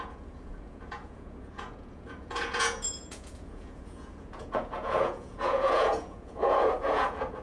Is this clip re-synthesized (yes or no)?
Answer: yes